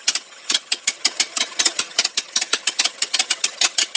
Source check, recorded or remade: remade